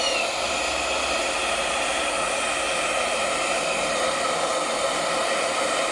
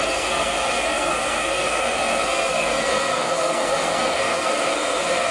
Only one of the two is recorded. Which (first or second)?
first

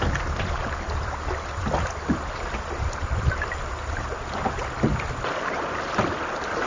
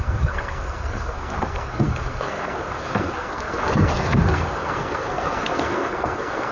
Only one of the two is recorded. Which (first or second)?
first